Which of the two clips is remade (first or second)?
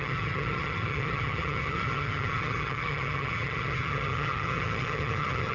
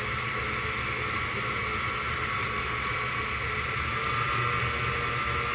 first